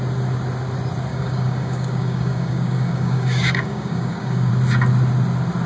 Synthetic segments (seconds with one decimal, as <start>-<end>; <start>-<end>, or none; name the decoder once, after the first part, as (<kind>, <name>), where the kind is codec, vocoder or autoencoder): 1.1-4.5 (codec, DAC)